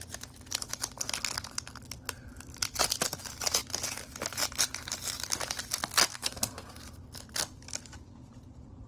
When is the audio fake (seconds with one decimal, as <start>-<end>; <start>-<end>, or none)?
6.1-6.7

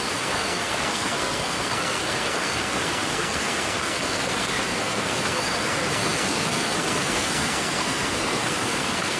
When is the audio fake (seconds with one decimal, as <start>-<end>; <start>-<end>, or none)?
0.0-9.2

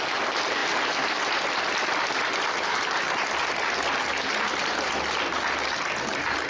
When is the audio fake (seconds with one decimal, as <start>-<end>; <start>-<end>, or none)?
none

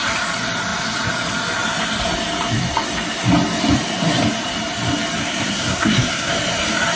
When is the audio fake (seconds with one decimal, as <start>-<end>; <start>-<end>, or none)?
5.2-6.3

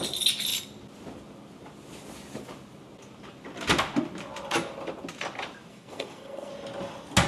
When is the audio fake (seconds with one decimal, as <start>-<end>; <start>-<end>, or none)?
5.7-6.5

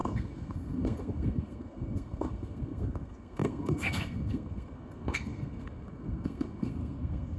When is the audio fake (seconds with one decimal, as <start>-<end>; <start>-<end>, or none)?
0.0-7.4